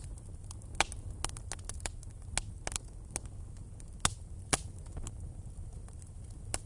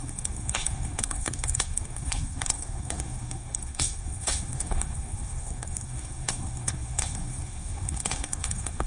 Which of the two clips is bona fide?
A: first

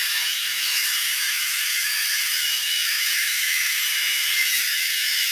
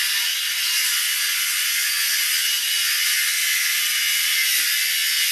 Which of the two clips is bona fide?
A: second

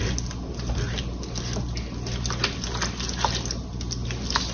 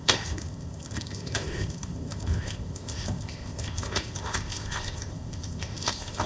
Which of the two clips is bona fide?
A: first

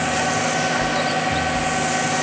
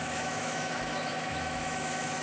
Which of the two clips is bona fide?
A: first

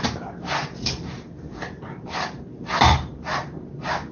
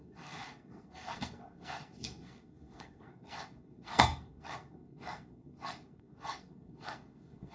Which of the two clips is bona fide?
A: first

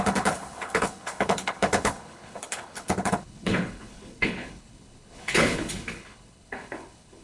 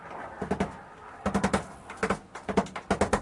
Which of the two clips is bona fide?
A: second